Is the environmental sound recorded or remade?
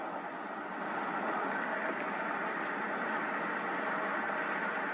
recorded